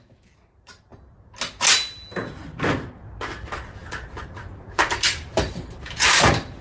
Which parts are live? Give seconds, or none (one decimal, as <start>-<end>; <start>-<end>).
0.9-4.3

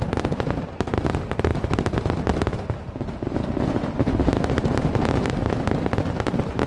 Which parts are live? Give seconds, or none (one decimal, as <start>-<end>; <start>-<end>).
0.0-6.7

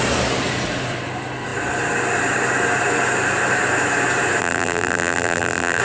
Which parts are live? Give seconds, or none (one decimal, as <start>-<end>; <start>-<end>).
0.0-4.4

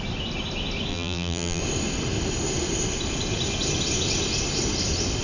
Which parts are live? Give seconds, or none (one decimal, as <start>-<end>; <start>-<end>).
0.0-0.9; 1.6-5.2

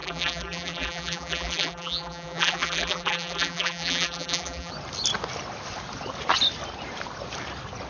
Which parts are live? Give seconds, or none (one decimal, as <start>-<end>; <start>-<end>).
4.7-7.9